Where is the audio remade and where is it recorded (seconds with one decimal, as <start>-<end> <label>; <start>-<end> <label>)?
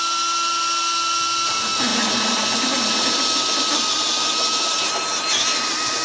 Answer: 0.0-6.0 recorded